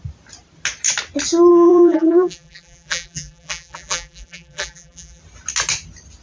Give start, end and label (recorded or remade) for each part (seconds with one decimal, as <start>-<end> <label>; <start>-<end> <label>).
0.0-1.5 recorded; 1.5-5.2 remade; 5.2-6.2 recorded